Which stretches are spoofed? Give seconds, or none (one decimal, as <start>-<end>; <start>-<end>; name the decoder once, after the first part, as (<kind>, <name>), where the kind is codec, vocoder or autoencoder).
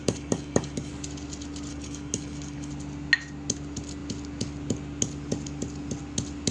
0.0-0.9 (codec, DAC); 1.7-2.7